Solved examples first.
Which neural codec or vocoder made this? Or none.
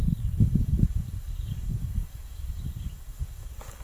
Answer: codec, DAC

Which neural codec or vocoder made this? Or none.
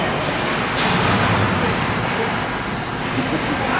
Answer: none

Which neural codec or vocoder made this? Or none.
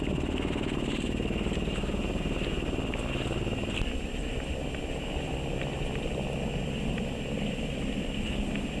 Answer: none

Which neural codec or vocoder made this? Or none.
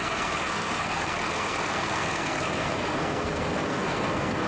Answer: codec, SNAC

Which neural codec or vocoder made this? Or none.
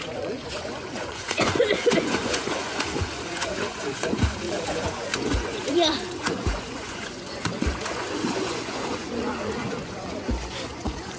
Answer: vocoder, Vocos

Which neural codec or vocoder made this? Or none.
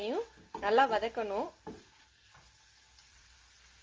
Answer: none